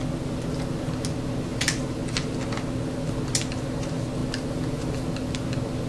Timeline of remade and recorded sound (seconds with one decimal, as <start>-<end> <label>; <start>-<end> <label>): 0.0-5.9 recorded